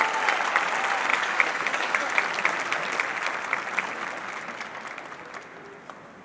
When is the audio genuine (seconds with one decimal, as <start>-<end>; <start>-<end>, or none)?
0.0-1.1; 2.1-6.2